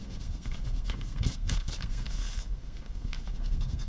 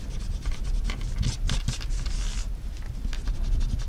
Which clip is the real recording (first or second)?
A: second